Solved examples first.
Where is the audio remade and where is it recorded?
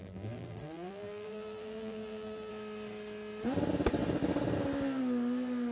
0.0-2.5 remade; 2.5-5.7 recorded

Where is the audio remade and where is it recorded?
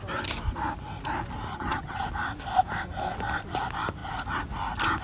0.0-1.5 recorded; 1.5-2.0 remade; 2.0-5.0 recorded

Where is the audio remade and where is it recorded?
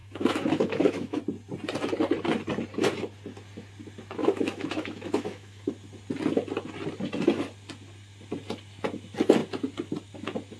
0.0-1.2 remade; 1.2-4.2 recorded; 4.2-5.7 remade; 5.7-10.6 recorded